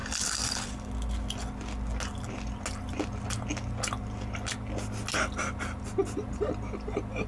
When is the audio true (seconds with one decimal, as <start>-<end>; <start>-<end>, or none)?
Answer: 0.9-7.3